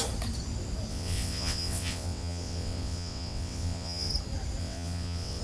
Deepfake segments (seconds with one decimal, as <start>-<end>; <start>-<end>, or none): 0.9-4.1; 4.6-5.4